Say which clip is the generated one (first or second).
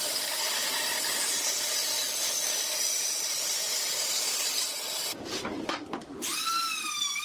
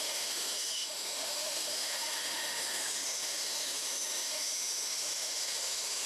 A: second